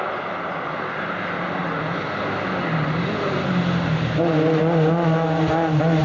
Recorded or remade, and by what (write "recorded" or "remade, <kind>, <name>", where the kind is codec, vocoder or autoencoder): recorded